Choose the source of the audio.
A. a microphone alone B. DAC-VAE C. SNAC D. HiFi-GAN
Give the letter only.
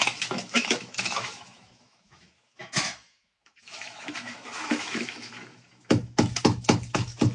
B